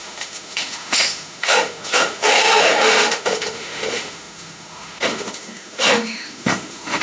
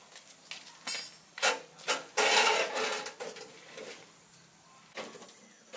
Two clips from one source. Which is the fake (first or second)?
first